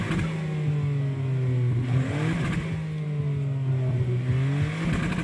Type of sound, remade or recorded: recorded